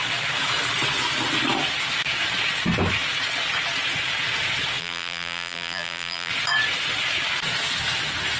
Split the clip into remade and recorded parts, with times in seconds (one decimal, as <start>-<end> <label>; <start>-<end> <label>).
0.0-4.8 recorded; 4.8-6.3 remade; 6.3-8.4 recorded